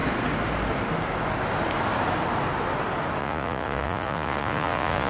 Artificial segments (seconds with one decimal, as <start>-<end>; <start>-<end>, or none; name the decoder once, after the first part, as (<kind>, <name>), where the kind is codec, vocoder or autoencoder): 3.2-5.1 (vocoder, Vocos)